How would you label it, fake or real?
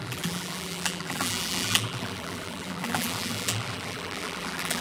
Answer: fake